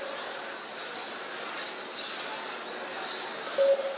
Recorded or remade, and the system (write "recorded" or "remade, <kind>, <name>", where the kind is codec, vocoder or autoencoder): recorded